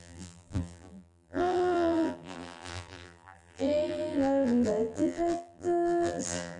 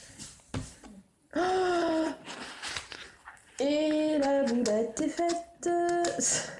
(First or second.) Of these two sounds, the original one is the second